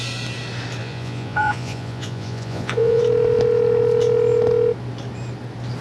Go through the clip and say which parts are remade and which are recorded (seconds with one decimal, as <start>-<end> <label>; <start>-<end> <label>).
0.0-0.8 recorded; 0.8-3.0 remade; 3.0-5.8 recorded